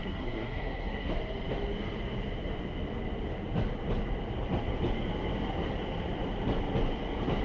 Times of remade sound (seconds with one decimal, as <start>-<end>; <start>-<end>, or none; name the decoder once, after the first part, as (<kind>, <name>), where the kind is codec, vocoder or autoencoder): 0.0-1.1 (codec, SNAC)